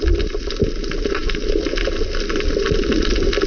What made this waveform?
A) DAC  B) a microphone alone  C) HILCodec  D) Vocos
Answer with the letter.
B